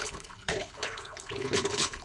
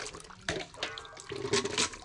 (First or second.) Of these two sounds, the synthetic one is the first